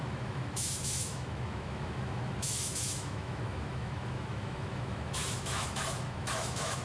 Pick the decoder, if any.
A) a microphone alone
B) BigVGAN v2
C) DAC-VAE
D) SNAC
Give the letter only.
C